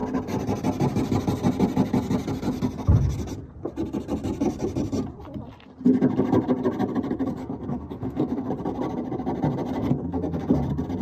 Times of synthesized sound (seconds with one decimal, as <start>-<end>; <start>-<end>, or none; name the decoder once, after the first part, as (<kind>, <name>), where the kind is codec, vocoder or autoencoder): 7.4-8.5 (codec, SNAC); 9.8-10.5